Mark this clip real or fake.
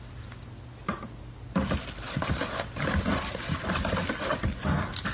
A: real